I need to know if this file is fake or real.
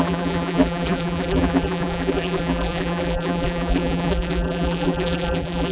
fake